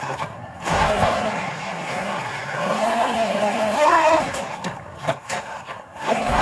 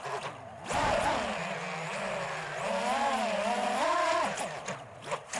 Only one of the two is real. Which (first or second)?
second